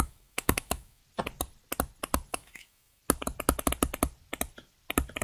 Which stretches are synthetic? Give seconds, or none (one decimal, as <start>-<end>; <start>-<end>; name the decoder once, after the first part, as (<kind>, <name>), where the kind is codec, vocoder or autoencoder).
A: 0.0-1.0 (autoencoder, DAC-VAE); 2.3-3.0